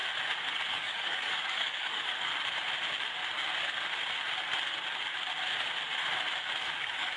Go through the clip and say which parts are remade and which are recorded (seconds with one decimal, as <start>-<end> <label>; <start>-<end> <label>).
0.0-0.7 recorded; 0.7-2.3 remade; 2.3-6.6 recorded; 6.6-7.2 remade